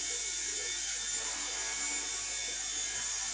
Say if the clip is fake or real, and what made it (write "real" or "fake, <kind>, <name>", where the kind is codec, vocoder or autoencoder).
real